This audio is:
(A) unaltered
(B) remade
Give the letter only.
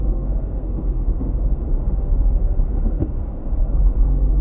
B